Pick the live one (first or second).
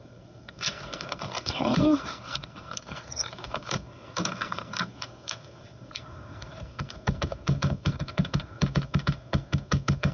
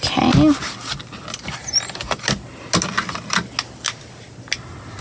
second